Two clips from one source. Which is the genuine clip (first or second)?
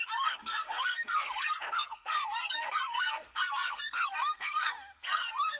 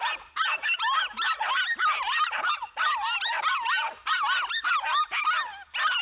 second